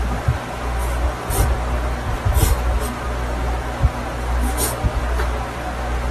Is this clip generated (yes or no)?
no